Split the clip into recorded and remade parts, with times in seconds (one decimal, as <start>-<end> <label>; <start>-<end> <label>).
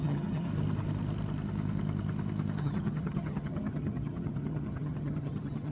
0.0-0.5 remade; 0.5-2.6 recorded; 2.6-5.7 remade